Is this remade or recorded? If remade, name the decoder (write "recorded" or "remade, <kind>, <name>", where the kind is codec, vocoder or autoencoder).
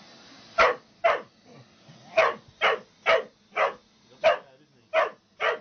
recorded